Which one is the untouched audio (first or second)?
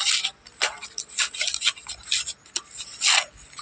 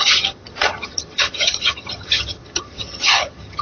first